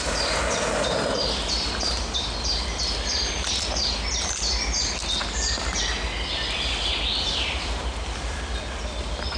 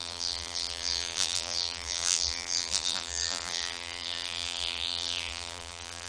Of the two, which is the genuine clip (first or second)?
first